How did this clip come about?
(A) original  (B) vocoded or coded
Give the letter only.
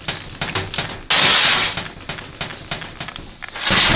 A